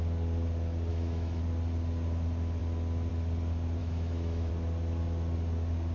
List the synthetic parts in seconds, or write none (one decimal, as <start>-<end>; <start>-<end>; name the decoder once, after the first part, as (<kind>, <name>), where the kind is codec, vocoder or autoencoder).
0.9-1.4 (autoencoder, DAC-VAE); 3.8-4.5